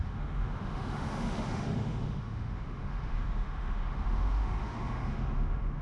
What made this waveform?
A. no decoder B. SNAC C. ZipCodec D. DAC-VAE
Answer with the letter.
D